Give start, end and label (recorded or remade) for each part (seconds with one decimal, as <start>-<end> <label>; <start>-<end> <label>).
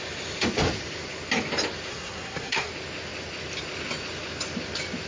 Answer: 0.0-1.9 recorded; 1.9-2.7 remade; 2.7-5.1 recorded